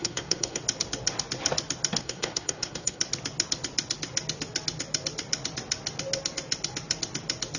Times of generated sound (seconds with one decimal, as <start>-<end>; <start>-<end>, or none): 0.0-0.6; 2.0-3.0